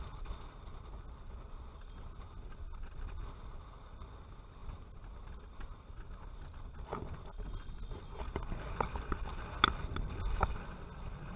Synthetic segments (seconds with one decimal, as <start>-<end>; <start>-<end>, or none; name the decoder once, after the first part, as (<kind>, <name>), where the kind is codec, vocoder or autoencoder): none